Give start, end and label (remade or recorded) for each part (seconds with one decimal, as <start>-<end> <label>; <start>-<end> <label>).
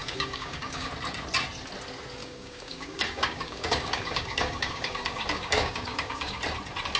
0.0-0.9 remade; 0.9-2.2 recorded; 2.2-6.4 remade; 6.4-7.0 recorded